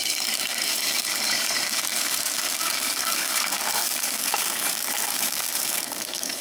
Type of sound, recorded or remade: remade